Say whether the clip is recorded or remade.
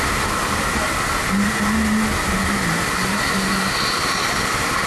recorded